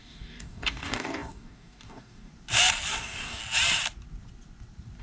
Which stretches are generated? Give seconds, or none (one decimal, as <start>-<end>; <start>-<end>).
0.0-2.3; 2.9-3.4